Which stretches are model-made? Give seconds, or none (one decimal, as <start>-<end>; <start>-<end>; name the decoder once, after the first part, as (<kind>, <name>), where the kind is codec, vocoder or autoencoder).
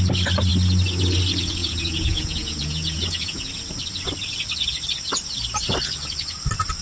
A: 1.6-3.5 (vocoder, Vocos)